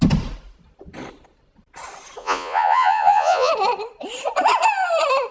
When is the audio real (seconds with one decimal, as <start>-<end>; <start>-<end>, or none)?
0.0-2.2; 3.5-5.3